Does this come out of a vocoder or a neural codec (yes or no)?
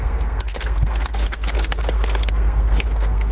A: yes